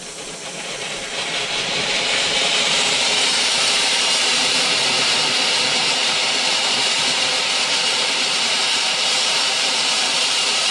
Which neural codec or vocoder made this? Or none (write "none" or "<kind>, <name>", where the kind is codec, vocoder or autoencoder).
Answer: vocoder, BigVGAN v2